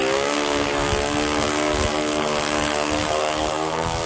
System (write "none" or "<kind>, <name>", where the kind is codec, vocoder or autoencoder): codec, DAC